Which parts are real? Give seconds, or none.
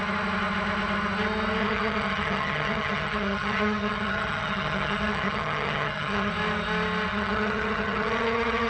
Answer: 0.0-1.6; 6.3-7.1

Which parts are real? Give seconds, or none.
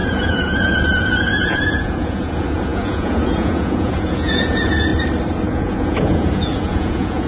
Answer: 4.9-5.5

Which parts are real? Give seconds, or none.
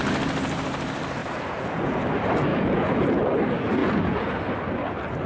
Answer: 0.0-1.2; 2.0-2.5; 3.2-3.8; 4.3-5.3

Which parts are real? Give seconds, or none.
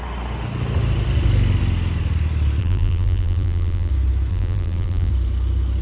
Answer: 0.0-2.6; 3.9-4.3; 5.1-5.8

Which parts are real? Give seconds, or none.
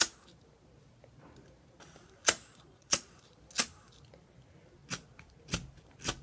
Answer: 0.0-2.5; 3.1-6.2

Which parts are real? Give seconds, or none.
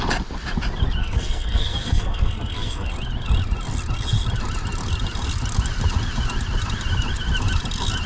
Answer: 0.0-1.0; 2.9-8.1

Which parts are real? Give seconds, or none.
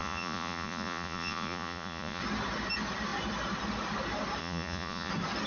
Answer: 2.2-4.4; 5.1-5.5